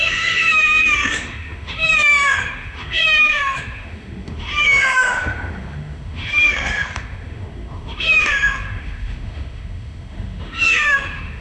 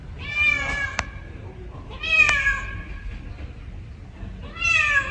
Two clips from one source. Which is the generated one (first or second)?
first